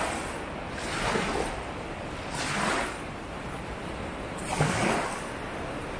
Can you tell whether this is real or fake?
real